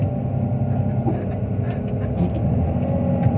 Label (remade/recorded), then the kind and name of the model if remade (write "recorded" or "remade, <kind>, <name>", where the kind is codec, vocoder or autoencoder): recorded